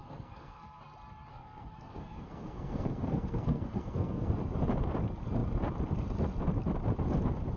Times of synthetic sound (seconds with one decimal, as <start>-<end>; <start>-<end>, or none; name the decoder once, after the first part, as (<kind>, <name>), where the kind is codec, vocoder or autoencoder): 0.0-0.8 (codec, SNAC); 1.3-4.3